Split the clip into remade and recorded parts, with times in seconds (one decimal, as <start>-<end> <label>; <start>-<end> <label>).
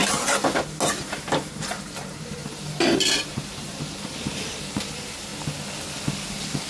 0.0-0.9 recorded; 0.9-5.3 remade; 5.3-6.7 recorded